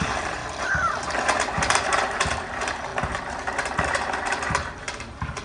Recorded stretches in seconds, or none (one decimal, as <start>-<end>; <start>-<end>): 0.4-1.2

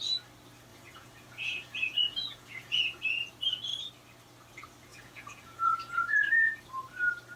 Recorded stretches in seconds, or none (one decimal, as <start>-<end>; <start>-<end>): 0.0-0.7; 3.0-4.9; 6.5-7.4

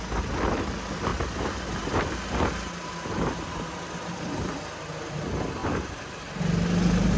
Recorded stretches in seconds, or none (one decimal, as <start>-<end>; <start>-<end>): 0.0-1.1; 1.7-5.6; 6.2-7.2